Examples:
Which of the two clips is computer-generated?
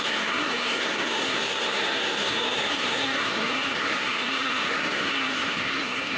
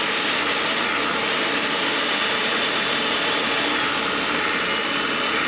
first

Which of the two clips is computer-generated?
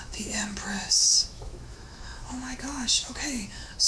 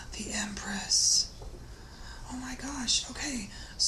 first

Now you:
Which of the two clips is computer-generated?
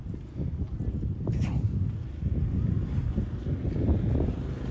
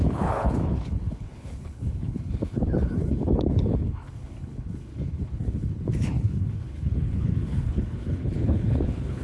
second